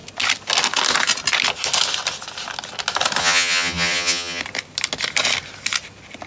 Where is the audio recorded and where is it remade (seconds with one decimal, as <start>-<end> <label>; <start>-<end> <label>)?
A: 0.0-3.2 recorded; 3.2-4.4 remade; 4.4-6.3 recorded